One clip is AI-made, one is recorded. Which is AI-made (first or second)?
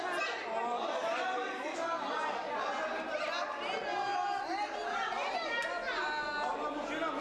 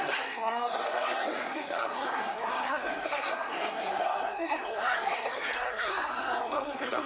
second